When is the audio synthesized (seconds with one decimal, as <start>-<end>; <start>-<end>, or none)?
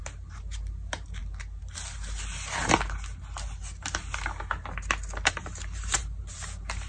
0.0-1.2; 5.3-6.9